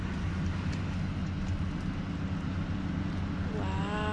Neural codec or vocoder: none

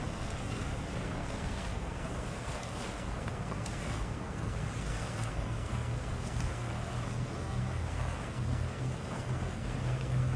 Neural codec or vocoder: codec, SNAC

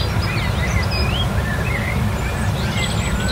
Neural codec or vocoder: none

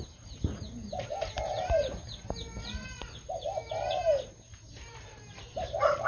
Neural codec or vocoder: vocoder, BigVGAN v2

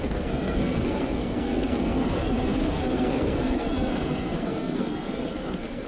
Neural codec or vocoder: codec, SNAC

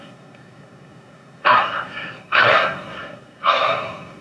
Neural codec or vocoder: codec, SNAC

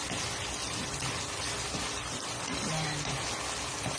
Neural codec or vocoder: none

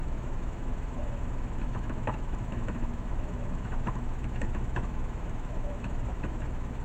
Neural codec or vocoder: autoencoder, DAC-VAE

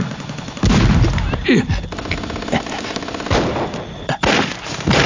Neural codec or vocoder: none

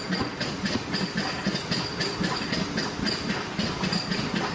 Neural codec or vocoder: none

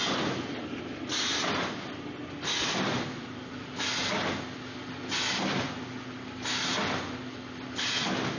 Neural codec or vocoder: none